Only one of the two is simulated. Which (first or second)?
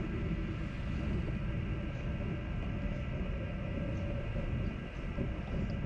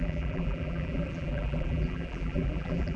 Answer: second